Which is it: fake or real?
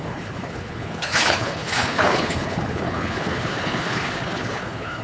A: fake